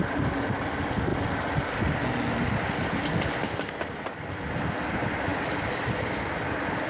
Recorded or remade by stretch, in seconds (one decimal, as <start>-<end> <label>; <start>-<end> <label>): 0.0-6.9 recorded